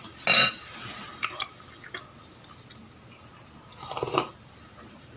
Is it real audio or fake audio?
real